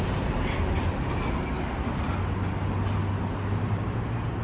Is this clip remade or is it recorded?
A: recorded